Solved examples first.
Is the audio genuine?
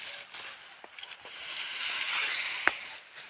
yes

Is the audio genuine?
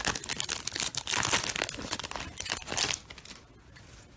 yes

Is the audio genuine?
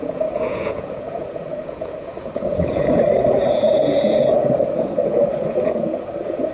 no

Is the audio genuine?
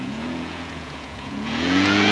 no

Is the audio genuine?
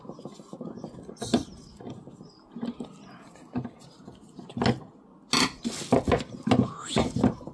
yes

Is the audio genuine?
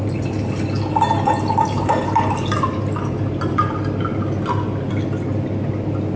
yes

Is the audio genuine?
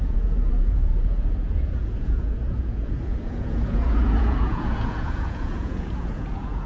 no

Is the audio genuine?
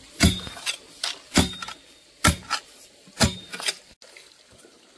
yes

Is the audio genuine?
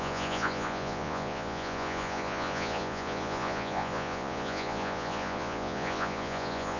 no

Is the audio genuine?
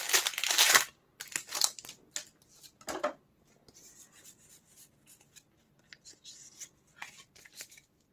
yes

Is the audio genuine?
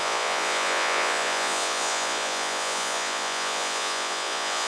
no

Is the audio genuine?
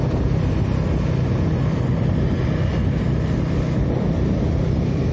yes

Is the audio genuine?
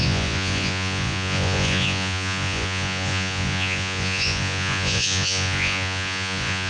no